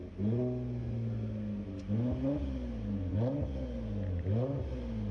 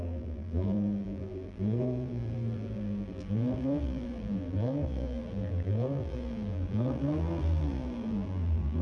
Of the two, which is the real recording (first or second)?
first